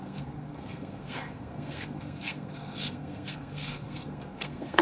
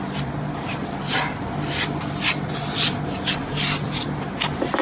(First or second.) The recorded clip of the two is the second